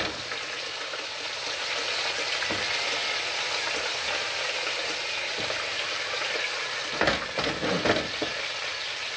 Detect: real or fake real